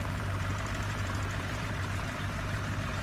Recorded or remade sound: remade